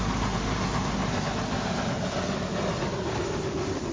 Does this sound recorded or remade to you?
recorded